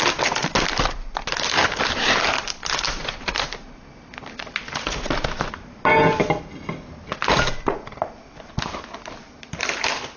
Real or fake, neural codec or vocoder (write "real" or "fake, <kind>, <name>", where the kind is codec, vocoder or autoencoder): real